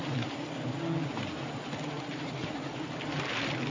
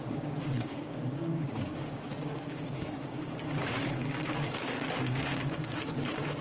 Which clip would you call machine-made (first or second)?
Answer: second